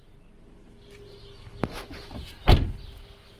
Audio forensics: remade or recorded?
recorded